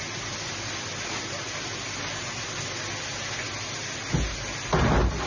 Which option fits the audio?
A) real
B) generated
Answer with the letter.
A